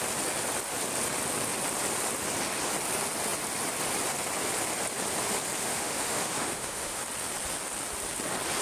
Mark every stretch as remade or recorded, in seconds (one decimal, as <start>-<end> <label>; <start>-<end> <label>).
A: 0.0-5.6 recorded; 5.6-7.0 remade; 7.0-8.6 recorded